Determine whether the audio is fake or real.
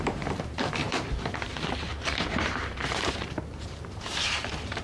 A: fake